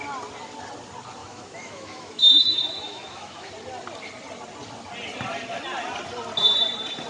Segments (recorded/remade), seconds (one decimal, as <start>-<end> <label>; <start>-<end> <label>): 0.0-1.2 recorded; 1.2-3.5 remade; 3.5-7.1 recorded